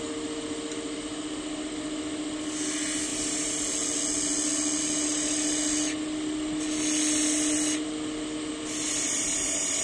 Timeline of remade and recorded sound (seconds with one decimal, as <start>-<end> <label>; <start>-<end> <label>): 0.0-9.8 recorded